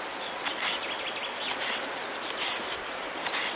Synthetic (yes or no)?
no